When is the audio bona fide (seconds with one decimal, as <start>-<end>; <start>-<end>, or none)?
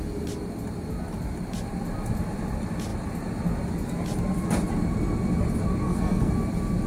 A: 0.0-5.8; 6.3-6.9